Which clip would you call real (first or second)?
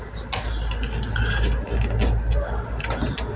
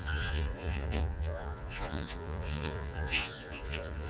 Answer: first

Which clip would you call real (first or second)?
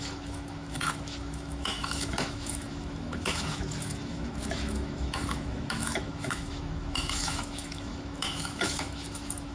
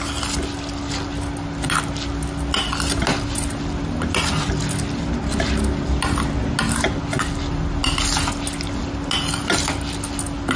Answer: second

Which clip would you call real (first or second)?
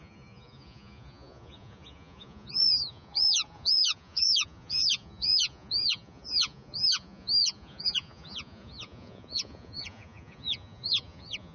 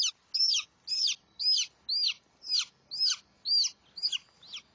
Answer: second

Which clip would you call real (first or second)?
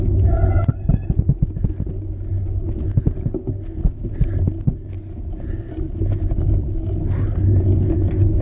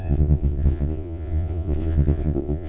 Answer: first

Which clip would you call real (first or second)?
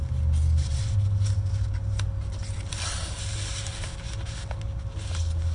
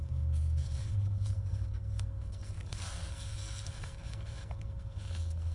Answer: first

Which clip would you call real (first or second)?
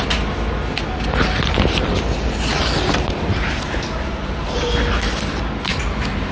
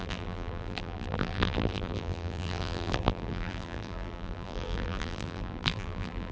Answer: first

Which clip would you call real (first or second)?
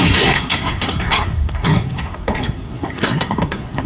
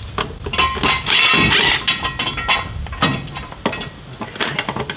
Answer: second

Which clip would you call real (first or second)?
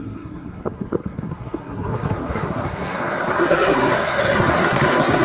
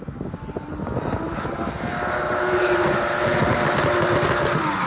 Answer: second